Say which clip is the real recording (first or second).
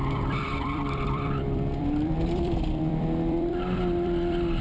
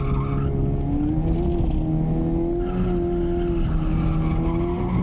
second